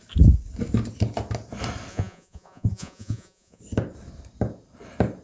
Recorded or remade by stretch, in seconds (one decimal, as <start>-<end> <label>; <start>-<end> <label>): 0.0-1.9 recorded; 1.9-3.6 remade; 3.6-5.2 recorded